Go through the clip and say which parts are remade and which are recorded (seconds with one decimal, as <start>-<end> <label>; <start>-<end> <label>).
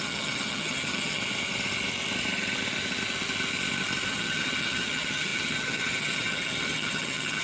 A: 0.0-1.2 remade; 1.2-4.1 recorded; 4.1-7.4 remade